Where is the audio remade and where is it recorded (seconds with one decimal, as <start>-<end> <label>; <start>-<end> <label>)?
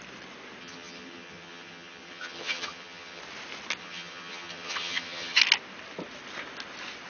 0.0-0.6 recorded; 0.6-3.2 remade; 3.2-3.8 recorded; 3.8-5.4 remade; 5.4-7.1 recorded